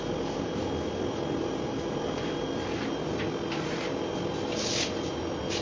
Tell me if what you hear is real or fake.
real